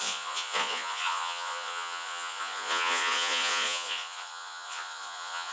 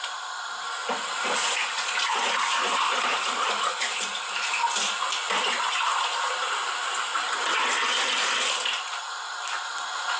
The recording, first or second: second